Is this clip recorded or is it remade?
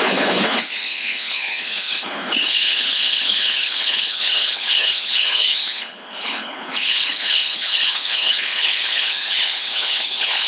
remade